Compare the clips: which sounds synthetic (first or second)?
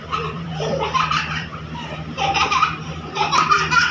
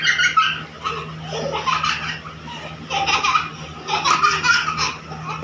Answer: first